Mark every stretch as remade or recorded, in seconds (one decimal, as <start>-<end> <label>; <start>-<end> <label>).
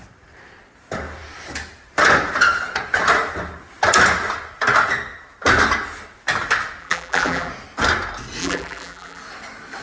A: 0.0-6.8 recorded; 6.8-7.5 remade; 7.5-8.4 recorded; 8.4-9.2 remade; 9.2-9.8 recorded